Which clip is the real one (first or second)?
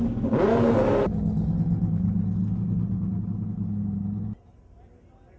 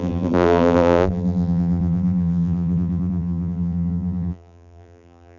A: first